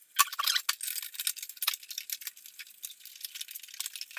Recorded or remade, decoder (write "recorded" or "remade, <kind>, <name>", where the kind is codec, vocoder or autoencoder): recorded